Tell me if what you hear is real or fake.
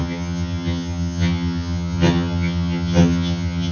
fake